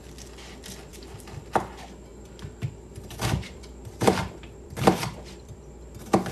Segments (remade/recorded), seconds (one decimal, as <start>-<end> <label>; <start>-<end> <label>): 0.0-0.9 recorded; 0.9-1.4 remade; 1.4-2.1 recorded; 2.1-5.6 remade; 5.6-6.3 recorded